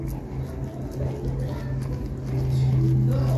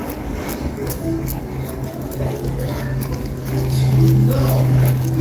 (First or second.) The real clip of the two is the first